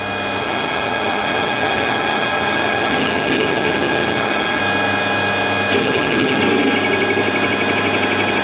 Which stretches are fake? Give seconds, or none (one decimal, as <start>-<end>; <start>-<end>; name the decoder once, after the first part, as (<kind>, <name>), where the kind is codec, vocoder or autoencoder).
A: 0.4-4.6 (vocoder, HiFi-GAN); 5.8-6.4